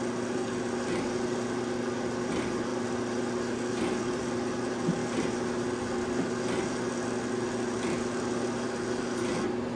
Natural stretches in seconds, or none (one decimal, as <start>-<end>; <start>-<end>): 0.0-9.8